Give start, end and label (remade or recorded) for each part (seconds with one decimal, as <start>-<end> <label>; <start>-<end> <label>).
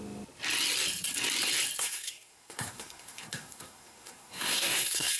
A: 0.0-1.8 recorded; 1.8-5.2 remade